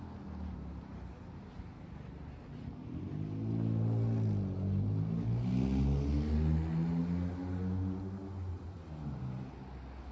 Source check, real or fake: real